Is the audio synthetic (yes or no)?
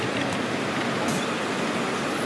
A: no